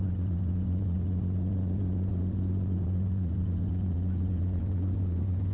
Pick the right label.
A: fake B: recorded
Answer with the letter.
A